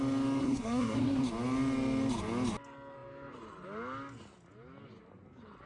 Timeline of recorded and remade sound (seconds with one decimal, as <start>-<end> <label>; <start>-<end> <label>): 0.0-0.4 recorded; 0.4-1.2 remade; 1.2-5.7 recorded